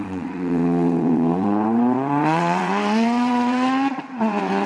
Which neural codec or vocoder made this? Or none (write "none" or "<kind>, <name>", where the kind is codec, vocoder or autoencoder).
vocoder, WaveNeXt